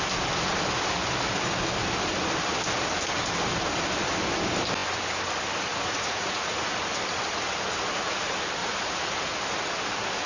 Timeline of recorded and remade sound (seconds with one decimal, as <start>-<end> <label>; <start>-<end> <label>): 0.0-5.7 recorded; 5.7-6.8 remade; 6.8-8.6 recorded; 8.6-9.3 remade; 9.3-10.3 recorded